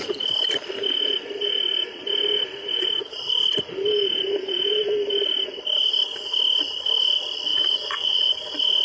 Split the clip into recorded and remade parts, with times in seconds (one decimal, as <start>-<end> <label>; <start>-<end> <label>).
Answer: 0.0-7.5 recorded; 7.5-8.3 remade; 8.3-8.8 recorded